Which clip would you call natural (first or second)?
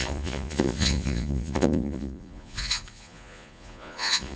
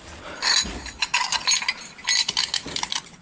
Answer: second